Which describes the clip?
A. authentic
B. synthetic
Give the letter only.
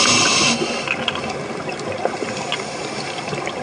A